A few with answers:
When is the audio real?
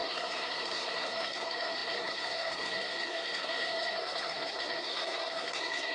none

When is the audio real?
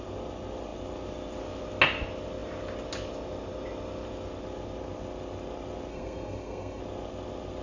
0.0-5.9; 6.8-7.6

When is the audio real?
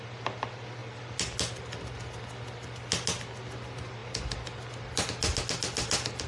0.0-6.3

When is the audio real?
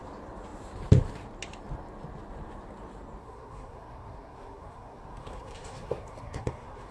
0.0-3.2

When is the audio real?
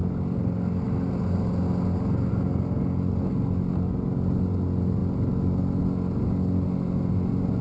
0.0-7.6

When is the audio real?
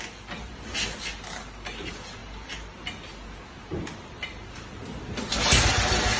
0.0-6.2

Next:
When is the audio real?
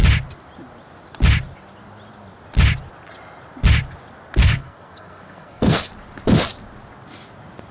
0.0-4.4; 5.9-7.7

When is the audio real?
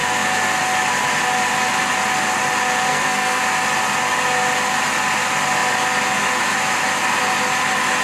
0.0-2.9; 3.4-8.0